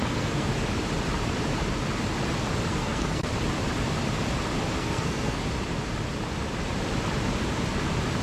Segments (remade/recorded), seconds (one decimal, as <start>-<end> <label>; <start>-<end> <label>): 0.0-0.5 remade; 0.5-2.7 recorded; 2.7-3.3 remade; 3.3-4.8 recorded; 4.8-5.4 remade; 5.4-8.2 recorded